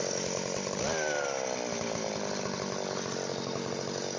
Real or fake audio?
real